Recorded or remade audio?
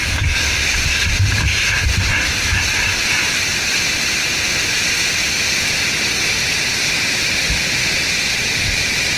recorded